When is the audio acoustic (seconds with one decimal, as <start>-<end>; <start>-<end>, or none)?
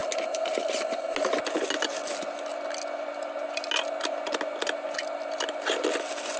0.0-6.4